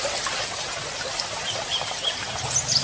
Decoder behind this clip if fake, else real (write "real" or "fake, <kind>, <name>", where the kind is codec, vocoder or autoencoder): real